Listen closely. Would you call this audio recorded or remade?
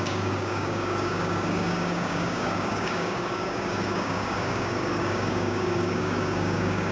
remade